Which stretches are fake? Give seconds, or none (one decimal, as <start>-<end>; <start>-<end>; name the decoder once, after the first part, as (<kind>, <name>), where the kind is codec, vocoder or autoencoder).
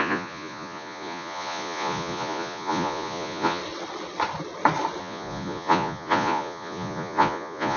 0.0-3.6 (vocoder, Vocos); 5.0-7.8